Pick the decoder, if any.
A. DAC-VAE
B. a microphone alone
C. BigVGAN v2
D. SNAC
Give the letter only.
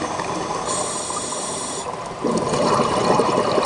B